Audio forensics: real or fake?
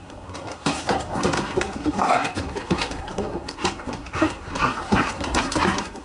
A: fake